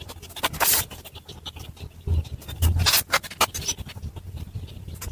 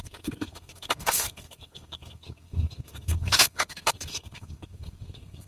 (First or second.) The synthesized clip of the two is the second